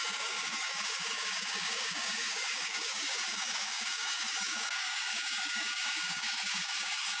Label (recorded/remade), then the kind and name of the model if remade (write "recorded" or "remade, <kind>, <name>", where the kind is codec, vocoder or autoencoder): remade, codec, DAC